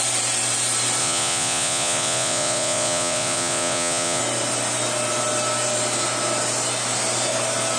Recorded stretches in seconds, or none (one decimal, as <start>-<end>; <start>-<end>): 0.0-1.0; 4.2-7.8